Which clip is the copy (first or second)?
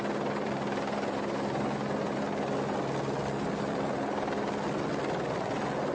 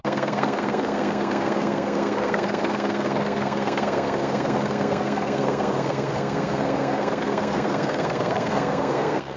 second